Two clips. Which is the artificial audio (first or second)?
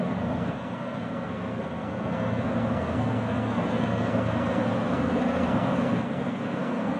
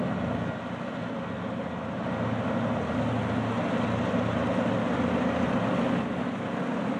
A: first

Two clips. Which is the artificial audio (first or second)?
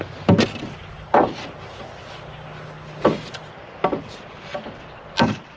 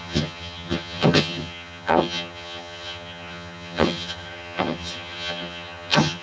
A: second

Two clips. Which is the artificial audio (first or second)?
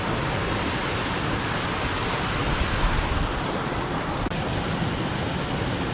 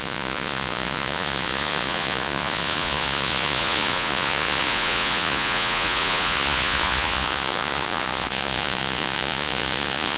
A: second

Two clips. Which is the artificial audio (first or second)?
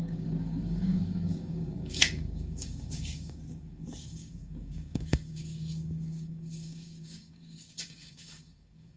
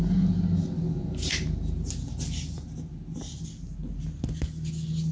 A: first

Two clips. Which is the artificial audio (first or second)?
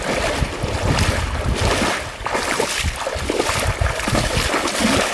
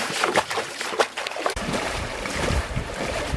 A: second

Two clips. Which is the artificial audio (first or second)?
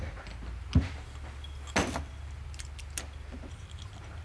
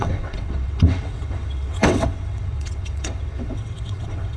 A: second